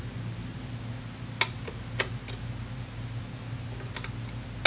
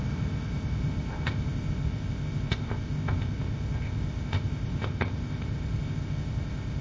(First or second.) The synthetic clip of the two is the second